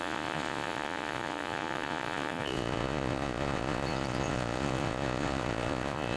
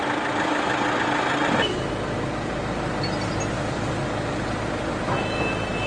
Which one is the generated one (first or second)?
first